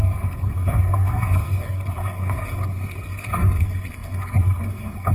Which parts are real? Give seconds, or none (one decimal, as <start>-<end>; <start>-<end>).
none